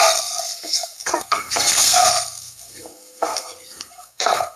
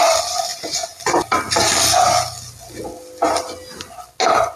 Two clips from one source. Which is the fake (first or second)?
first